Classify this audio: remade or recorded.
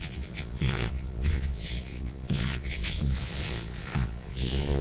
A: remade